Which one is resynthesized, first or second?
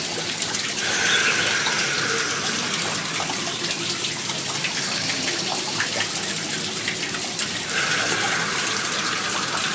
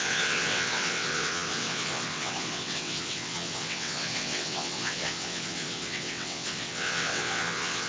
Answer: second